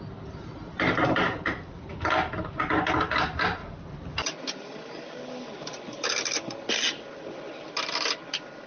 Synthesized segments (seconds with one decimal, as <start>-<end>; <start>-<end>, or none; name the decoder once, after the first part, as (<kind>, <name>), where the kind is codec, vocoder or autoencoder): none